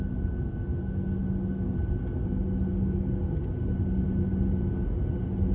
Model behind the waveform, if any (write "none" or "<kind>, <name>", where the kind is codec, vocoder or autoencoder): none